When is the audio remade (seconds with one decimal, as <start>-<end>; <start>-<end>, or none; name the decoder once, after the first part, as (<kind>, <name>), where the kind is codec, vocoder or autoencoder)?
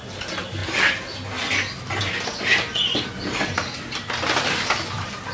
none